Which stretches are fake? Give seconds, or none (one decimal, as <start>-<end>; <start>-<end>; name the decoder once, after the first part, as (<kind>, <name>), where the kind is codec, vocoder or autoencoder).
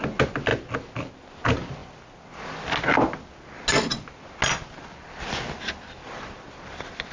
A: none